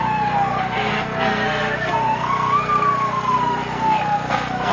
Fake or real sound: fake